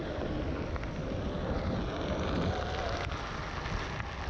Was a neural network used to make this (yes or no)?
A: no